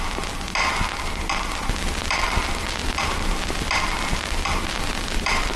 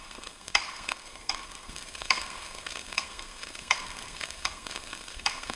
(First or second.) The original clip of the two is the first